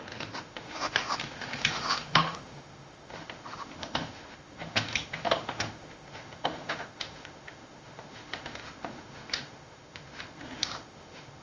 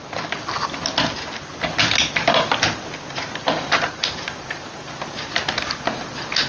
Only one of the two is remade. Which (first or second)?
first